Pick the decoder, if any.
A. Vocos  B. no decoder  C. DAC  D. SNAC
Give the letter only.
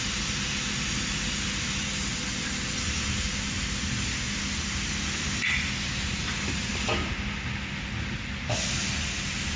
B